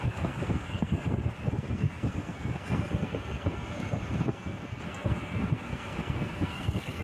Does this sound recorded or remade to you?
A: remade